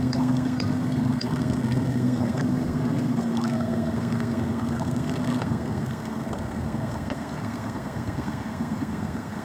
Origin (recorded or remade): remade